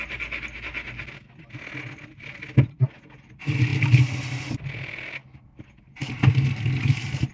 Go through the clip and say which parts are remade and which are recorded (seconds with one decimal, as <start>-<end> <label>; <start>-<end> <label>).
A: 0.0-7.3 recorded